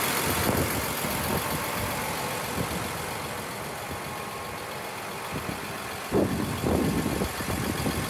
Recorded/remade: recorded